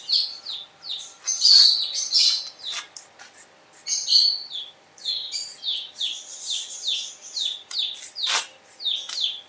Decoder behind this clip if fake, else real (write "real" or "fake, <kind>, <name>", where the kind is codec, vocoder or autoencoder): real